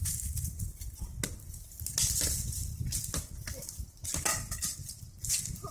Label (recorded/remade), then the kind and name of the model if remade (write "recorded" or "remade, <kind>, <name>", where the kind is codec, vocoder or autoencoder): recorded